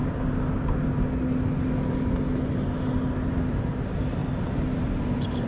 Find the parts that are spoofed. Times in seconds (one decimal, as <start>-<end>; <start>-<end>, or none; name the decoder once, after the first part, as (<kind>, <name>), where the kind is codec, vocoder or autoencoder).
3.3-4.2 (vocoder, BigVGAN v2); 4.8-5.5